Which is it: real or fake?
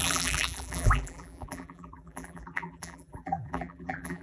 fake